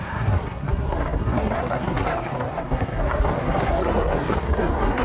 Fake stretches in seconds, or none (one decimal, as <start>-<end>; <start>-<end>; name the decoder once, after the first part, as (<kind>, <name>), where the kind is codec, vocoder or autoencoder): 0.0-5.0 (codec, SNAC)